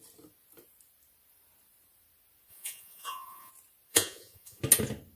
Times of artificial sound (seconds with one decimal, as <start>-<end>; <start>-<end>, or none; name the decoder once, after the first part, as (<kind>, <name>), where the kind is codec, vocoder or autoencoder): 2.5-3.5 (vocoder, Vocos); 3.9-4.6